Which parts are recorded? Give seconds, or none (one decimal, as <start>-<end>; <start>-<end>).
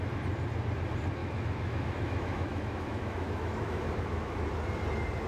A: 0.0-1.2; 4.4-5.3